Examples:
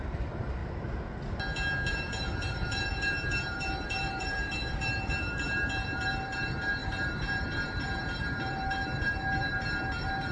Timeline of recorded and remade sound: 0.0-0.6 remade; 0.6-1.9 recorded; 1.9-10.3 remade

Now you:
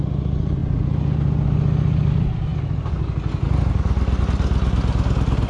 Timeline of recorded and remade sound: 0.0-5.5 recorded

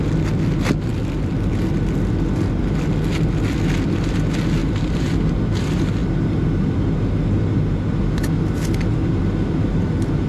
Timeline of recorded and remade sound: 0.0-4.6 recorded; 4.6-5.3 remade; 5.3-10.3 recorded

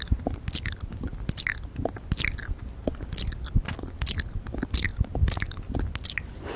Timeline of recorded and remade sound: 0.0-6.6 recorded

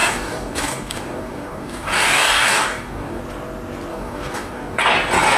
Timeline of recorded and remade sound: 0.0-3.2 remade; 3.2-3.9 recorded; 3.9-4.8 remade; 4.8-5.4 recorded

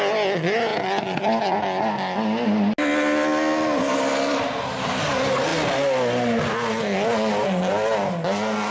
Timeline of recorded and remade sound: 0.0-8.7 recorded

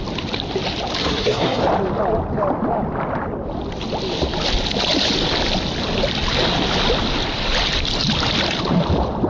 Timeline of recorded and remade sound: 0.0-1.0 recorded; 1.0-1.6 remade; 1.6-9.3 recorded